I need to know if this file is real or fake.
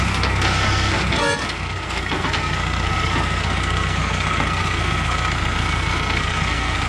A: fake